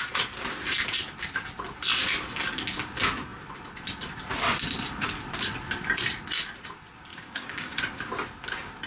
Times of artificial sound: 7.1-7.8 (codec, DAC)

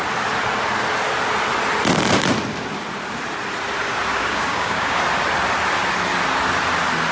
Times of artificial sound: 4.1-5.0 (codec, DAC)

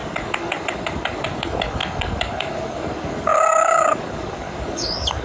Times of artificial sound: 0.0-5.2 (codec, DAC)

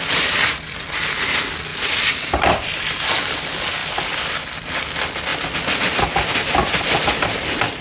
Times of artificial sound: none

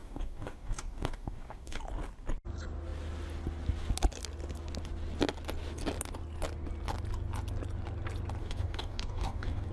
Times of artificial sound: 0.0-1.8 (codec, DAC); 8.4-9.7